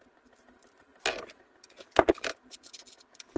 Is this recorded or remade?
recorded